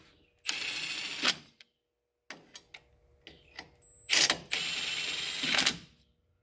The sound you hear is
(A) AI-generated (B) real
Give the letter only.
B